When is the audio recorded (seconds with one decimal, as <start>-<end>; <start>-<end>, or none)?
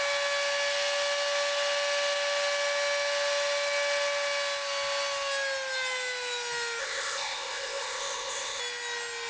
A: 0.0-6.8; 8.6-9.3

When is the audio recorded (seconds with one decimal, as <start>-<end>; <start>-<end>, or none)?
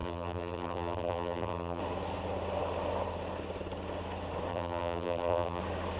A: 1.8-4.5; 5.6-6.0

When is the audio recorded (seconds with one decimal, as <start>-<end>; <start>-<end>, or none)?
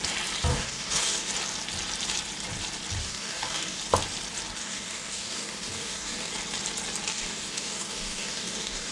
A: 0.0-0.5; 1.3-3.0; 3.8-4.6; 6.3-7.1